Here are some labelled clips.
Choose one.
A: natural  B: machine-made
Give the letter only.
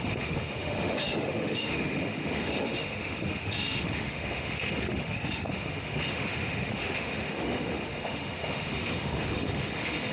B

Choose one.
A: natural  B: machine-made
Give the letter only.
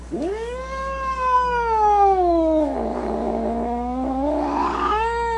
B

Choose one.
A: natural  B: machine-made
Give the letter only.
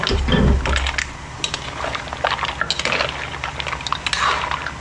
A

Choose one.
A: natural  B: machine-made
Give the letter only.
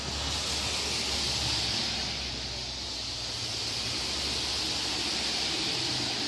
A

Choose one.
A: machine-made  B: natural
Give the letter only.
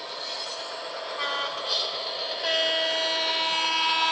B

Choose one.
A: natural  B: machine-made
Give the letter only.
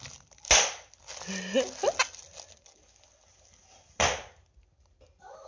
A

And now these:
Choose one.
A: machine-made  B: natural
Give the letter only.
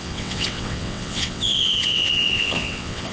A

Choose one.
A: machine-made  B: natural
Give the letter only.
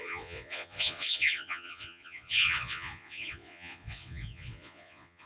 A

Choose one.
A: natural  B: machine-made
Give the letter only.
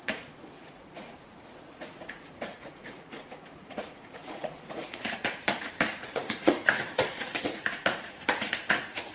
B